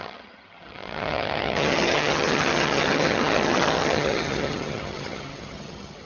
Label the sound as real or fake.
fake